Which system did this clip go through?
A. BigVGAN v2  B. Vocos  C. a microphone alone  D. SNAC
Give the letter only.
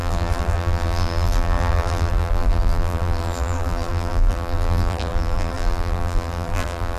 A